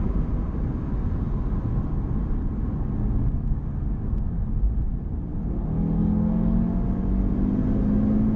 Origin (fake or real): real